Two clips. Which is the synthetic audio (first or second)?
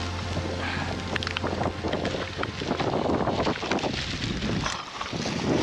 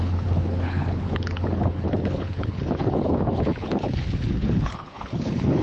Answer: second